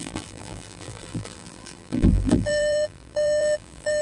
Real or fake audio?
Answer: fake